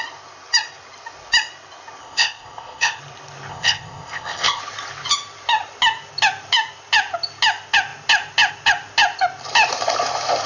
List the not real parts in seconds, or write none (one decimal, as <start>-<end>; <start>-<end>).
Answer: 2.0-3.0; 3.5-4.6